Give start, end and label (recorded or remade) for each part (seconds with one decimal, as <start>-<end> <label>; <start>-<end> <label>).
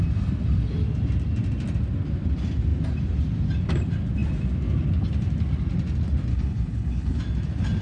0.0-6.3 recorded; 6.3-7.2 remade; 7.2-7.8 recorded